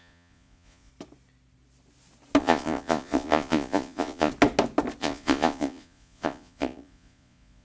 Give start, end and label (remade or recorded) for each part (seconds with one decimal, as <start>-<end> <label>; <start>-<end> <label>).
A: 0.0-0.9 remade; 0.9-2.4 recorded; 2.4-4.3 remade; 4.3-5.0 recorded; 5.0-7.6 remade

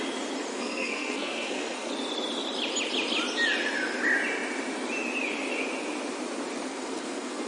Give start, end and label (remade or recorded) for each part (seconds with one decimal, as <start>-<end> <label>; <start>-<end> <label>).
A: 0.0-0.5 recorded; 0.5-1.9 remade; 1.9-6.7 recorded; 6.7-7.5 remade

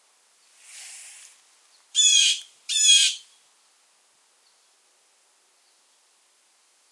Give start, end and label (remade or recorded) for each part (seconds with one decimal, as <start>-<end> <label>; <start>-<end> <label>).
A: 0.0-6.9 recorded